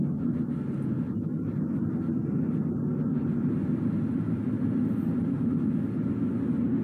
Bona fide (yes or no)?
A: yes